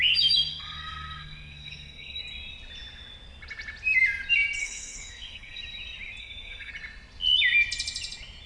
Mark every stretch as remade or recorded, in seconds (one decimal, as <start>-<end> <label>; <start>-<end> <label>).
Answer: 0.0-0.5 recorded; 0.5-2.2 remade; 2.2-4.6 recorded; 4.6-5.6 remade; 5.6-6.2 recorded; 6.2-6.7 remade; 6.7-8.5 recorded

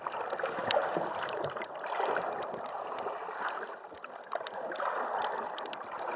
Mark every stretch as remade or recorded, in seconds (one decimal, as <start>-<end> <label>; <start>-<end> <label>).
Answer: 0.0-6.2 recorded

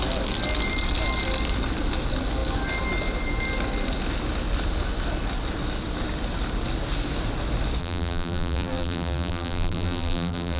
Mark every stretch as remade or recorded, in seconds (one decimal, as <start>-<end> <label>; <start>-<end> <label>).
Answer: 0.0-7.8 recorded; 7.8-10.6 remade

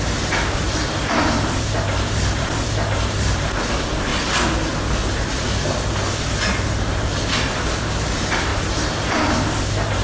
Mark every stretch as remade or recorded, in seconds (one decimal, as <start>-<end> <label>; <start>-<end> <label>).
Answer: 0.0-4.1 remade; 4.1-6.5 recorded; 6.5-10.0 remade

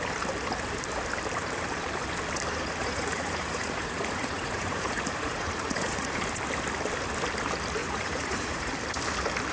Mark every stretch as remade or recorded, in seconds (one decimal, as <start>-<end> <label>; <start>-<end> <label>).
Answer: 0.0-2.8 recorded; 2.8-6.1 remade; 6.1-7.8 recorded; 7.8-8.7 remade; 8.7-9.5 recorded